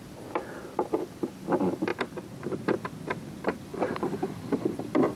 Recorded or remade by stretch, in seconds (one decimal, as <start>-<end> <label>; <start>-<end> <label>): 0.0-5.2 recorded